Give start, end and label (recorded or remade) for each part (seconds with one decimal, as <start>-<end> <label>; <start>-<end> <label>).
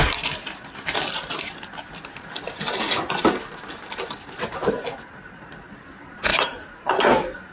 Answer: 0.0-7.5 recorded